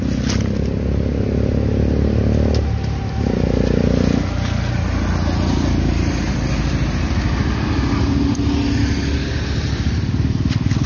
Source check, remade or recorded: recorded